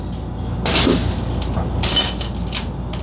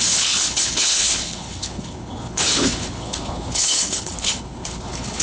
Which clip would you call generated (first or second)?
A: second